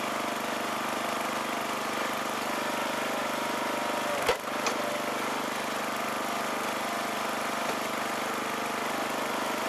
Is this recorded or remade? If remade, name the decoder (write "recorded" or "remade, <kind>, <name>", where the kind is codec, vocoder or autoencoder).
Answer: recorded